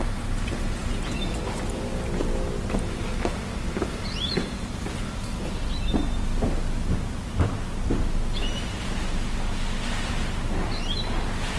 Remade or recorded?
recorded